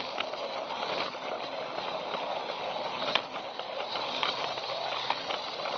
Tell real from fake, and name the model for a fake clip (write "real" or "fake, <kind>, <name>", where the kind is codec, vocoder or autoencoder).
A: real